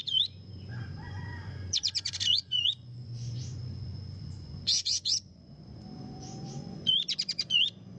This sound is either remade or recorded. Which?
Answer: remade